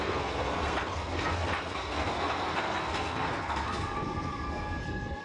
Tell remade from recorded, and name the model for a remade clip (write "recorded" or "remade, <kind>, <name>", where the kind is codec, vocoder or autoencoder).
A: remade, codec, SNAC